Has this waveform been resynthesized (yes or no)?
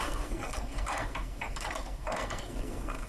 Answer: yes